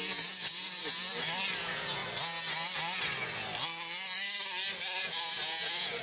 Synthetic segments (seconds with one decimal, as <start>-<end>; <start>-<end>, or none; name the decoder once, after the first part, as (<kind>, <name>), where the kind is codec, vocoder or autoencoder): 0.0-1.1 (vocoder, Vocos); 1.6-2.0; 5.0-6.0

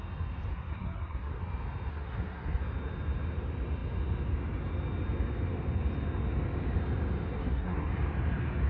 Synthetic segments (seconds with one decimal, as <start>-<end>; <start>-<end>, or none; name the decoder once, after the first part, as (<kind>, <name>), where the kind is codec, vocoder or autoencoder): 0.5-1.4 (codec, SNAC); 1.9-2.6; 7.3-7.9

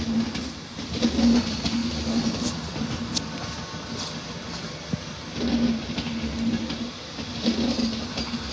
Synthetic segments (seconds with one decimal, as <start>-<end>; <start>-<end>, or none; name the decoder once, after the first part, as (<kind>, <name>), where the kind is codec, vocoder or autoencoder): none

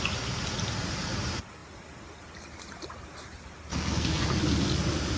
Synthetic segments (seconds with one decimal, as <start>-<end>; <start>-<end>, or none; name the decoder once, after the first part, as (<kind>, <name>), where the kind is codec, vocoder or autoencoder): 3.7-4.4 (codec, SNAC)